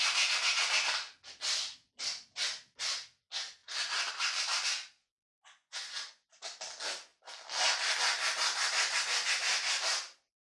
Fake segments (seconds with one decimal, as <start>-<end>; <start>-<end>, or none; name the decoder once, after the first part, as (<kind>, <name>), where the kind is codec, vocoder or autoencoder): 5.0-6.3 (vocoder, Vocos)